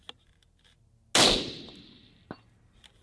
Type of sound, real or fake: real